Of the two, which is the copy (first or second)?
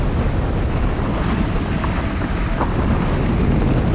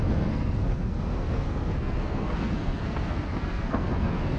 second